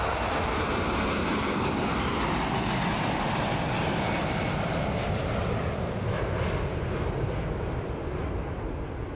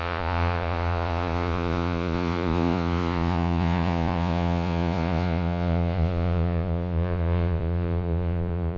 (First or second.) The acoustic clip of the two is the first